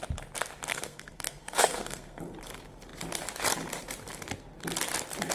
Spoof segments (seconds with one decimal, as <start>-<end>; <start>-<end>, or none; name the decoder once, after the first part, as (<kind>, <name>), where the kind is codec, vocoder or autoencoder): 0.7-2.2 (codec, SNAC)